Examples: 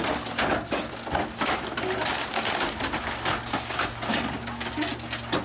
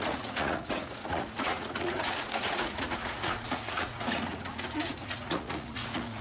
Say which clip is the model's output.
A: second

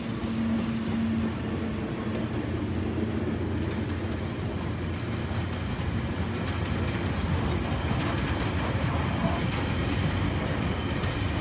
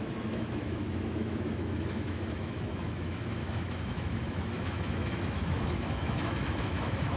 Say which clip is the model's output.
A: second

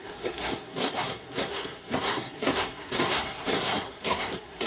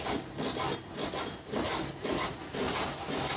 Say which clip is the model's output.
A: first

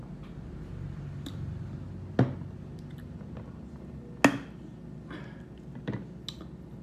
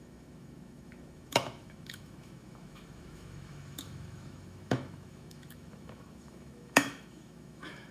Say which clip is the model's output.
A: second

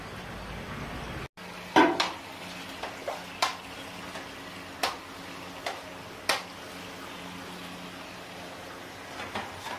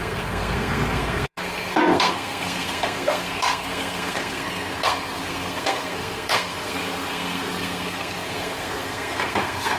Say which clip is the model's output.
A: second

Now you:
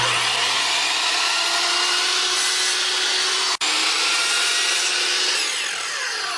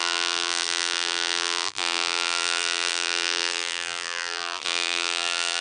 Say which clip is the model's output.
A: second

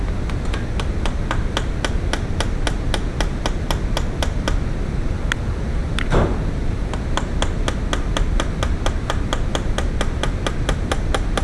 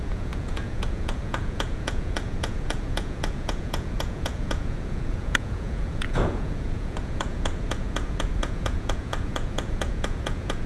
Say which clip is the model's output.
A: second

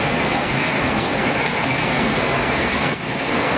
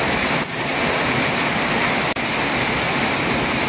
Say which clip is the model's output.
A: first